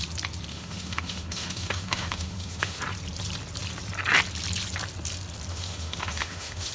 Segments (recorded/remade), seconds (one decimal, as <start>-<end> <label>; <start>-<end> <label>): 0.0-0.5 recorded; 0.5-2.8 remade; 2.8-5.5 recorded; 5.5-6.7 remade